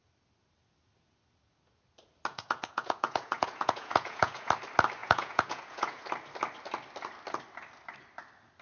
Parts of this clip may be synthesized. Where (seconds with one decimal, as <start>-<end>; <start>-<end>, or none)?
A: 2.3-4.5; 5.0-6.0